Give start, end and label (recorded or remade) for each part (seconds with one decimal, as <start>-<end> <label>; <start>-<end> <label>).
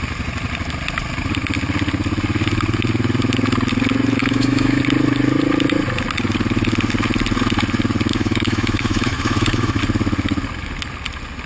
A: 0.0-4.2 recorded; 4.2-4.8 remade; 4.8-8.1 recorded; 8.1-9.8 remade; 9.8-11.5 recorded